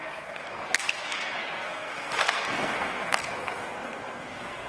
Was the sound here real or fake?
fake